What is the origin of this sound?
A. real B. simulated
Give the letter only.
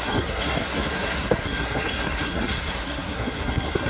B